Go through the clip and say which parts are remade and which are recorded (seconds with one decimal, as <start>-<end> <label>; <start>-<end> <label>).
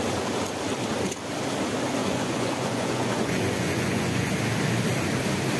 0.0-2.0 recorded; 2.0-4.3 remade; 4.3-5.6 recorded